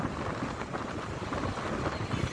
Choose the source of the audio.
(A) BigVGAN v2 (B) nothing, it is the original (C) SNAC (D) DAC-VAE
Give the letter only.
B